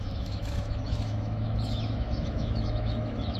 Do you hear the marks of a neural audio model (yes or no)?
yes